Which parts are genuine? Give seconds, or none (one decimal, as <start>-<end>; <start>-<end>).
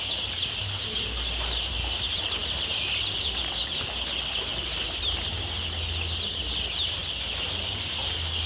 0.0-4.5; 5.0-7.0; 7.5-8.5